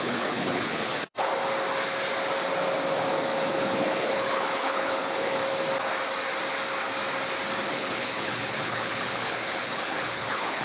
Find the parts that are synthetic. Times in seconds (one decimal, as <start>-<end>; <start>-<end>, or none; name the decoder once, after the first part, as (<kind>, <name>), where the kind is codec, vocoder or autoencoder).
0.0-1.3 (codec, HILCodec); 3.5-5.4; 7.7-10.6